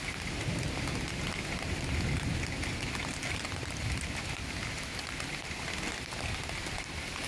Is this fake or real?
real